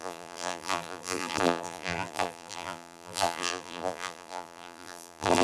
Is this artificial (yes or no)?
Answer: yes